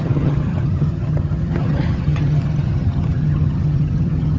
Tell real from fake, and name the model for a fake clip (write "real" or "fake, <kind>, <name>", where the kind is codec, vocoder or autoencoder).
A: fake, vocoder, HiFi-GAN